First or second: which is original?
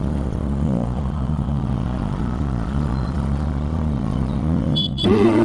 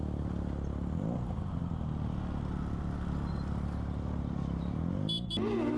second